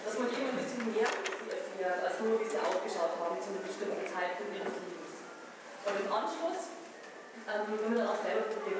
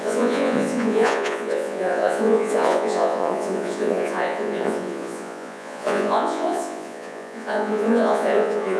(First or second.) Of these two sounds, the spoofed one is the second